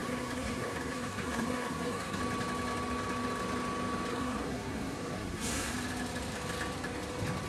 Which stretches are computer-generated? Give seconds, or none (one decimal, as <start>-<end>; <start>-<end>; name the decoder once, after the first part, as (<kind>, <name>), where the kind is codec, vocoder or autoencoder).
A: 0.0-2.2 (codec, SNAC); 4.1-5.7